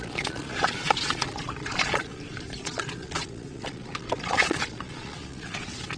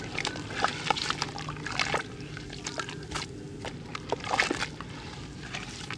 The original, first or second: second